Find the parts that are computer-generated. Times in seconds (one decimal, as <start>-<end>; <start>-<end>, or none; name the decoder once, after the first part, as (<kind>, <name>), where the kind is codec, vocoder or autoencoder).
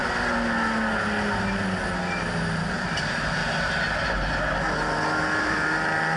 2.7-3.4 (vocoder, BigVGAN v2); 5.4-6.2